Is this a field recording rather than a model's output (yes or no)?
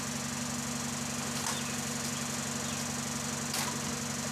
yes